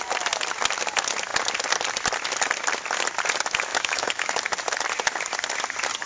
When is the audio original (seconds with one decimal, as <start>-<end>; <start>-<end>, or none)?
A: 0.0-3.7; 4.3-6.1